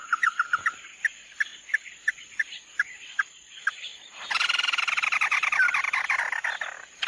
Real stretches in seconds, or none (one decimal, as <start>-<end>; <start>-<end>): 0.0-0.7; 1.5-2.2